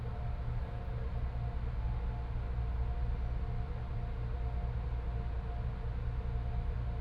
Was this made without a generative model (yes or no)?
yes